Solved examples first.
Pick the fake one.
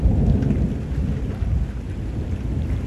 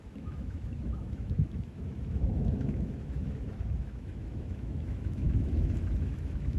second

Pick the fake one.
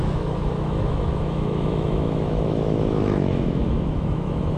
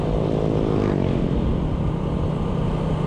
first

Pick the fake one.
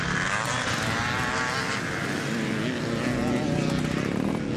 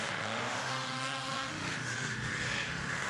second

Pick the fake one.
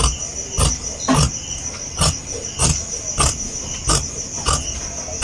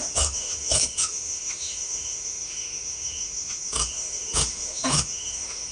second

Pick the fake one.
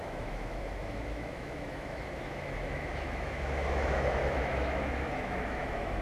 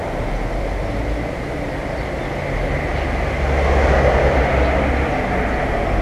first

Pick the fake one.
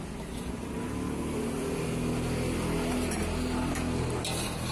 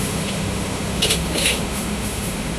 second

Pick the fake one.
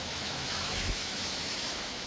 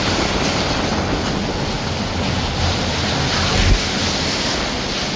first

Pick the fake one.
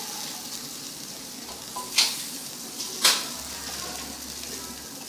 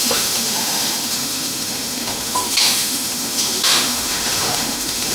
second